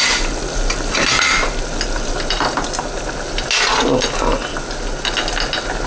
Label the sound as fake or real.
real